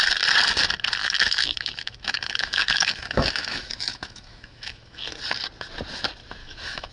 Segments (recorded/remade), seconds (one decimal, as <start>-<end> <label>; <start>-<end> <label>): 0.0-1.0 recorded; 1.0-5.1 remade; 5.1-6.4 recorded; 6.4-6.9 remade